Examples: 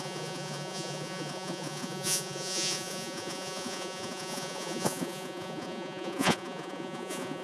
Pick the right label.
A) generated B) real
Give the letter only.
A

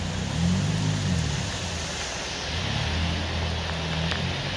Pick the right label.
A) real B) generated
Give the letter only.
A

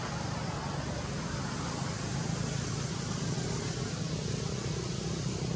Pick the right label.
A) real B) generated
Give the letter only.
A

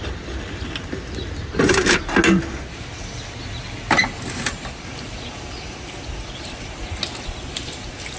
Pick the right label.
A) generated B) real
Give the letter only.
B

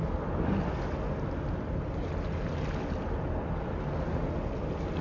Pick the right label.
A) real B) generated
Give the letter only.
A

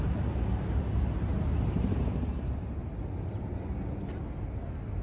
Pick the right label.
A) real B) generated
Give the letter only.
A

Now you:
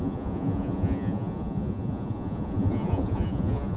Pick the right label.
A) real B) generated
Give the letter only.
B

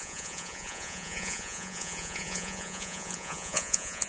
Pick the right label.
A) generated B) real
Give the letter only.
A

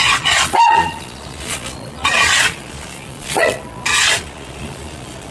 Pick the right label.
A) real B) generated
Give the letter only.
B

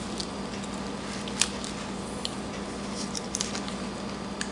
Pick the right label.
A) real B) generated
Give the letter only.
A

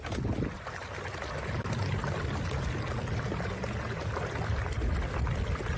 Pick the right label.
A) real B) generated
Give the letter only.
A